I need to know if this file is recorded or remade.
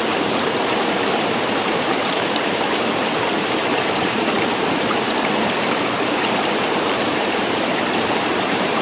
remade